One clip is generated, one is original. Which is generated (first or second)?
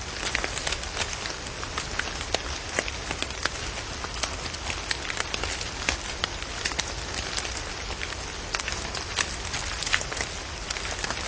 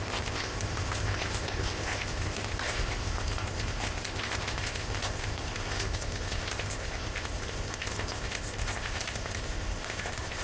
second